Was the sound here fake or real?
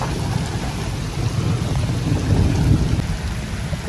real